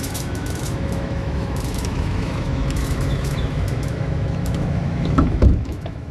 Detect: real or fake fake